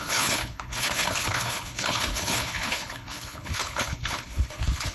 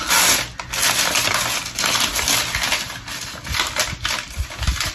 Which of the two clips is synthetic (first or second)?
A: first